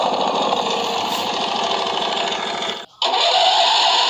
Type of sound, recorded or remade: recorded